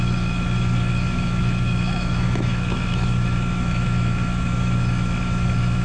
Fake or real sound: fake